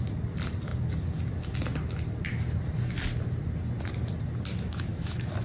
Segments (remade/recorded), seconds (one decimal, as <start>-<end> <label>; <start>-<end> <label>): 0.0-4.5 recorded; 4.5-5.4 remade